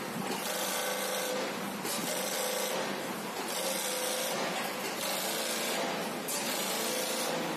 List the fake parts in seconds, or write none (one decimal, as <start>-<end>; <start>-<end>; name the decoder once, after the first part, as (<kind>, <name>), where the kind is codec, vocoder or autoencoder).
none